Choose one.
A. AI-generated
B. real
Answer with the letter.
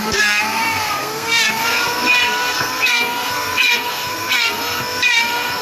A